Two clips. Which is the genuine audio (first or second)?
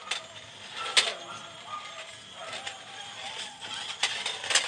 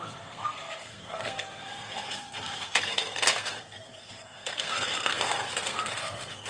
first